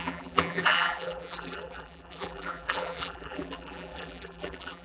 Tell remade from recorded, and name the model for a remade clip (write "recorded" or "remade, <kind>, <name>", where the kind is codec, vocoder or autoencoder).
remade, vocoder, BigVGAN v2